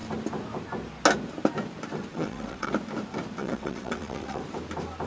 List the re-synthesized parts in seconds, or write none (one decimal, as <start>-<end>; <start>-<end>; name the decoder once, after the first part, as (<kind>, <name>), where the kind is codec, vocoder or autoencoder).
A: 2.1-2.7 (vocoder, WaveNeXt); 3.4-4.4